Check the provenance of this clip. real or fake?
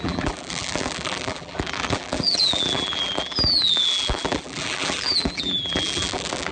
fake